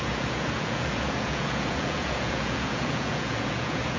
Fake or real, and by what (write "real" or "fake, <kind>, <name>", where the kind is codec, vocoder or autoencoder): fake, vocoder, Vocos